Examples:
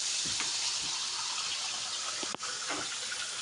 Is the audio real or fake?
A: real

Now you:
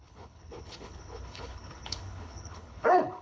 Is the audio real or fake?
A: fake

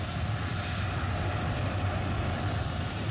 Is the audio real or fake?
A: real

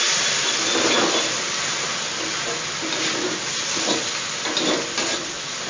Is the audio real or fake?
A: real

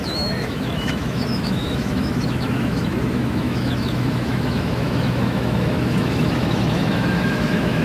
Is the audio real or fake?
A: fake